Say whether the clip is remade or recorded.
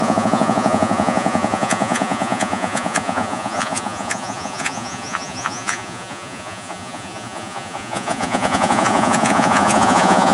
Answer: remade